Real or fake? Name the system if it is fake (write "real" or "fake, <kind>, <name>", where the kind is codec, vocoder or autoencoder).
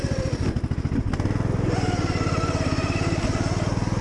real